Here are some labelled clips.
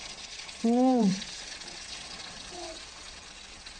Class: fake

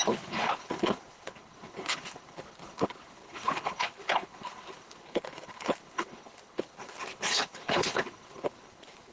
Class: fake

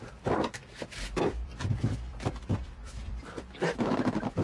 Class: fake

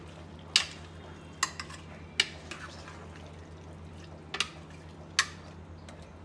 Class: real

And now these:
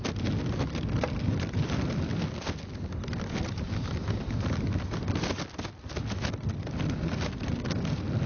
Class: real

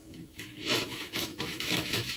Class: fake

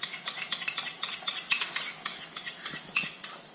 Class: real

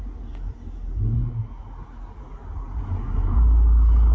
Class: real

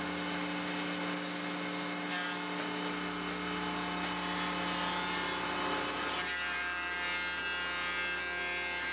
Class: real